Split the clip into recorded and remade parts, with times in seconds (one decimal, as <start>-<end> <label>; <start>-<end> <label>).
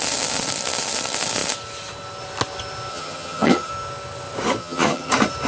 0.0-2.9 recorded; 2.9-3.7 remade; 3.7-4.6 recorded; 4.6-5.1 remade; 5.1-5.5 recorded